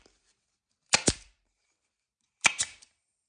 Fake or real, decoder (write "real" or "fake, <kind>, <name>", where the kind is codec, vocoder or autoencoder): fake, vocoder, BigVGAN v2